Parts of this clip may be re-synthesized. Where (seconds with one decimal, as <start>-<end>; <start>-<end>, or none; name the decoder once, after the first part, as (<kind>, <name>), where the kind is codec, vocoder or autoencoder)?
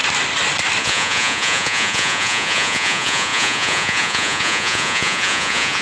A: 0.8-5.8 (vocoder, Vocos)